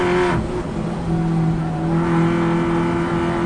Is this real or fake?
real